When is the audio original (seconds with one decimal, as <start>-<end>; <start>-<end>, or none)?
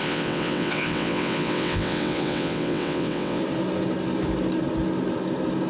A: 3.4-5.7